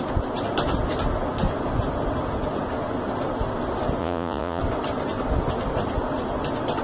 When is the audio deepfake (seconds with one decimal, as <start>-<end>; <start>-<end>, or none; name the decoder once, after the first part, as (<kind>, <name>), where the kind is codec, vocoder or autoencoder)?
4.0-4.6 (vocoder, Vocos)